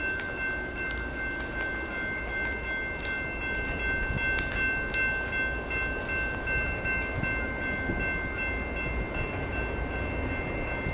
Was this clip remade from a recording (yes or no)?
no